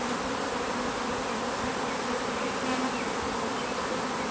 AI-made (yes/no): no